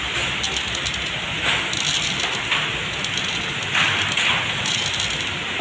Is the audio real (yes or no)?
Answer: yes